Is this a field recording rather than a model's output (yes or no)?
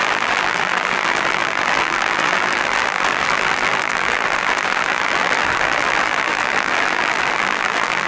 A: no